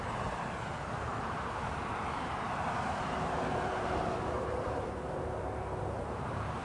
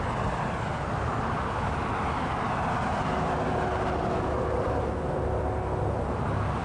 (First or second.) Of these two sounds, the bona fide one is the second